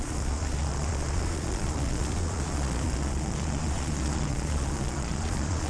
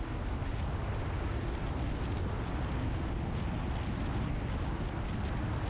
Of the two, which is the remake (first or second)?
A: first